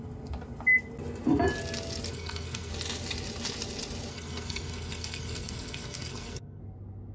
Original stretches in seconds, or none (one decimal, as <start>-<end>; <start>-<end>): 0.0-2.1; 2.7-4.1; 6.6-7.1